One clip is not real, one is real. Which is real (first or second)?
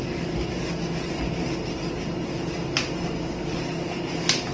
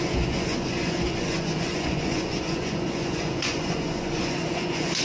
first